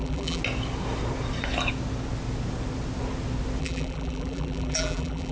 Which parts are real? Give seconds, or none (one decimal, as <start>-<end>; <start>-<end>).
0.4-3.6